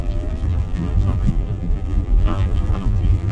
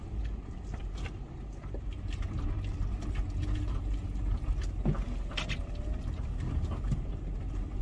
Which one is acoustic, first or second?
second